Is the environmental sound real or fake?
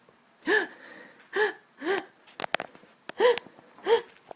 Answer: real